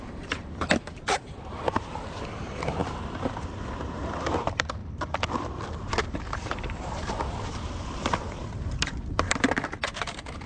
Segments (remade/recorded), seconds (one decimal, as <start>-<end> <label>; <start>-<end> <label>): 0.0-4.8 remade; 4.8-6.1 recorded; 6.1-10.5 remade